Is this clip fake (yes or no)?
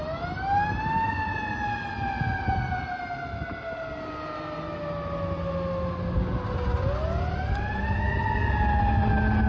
no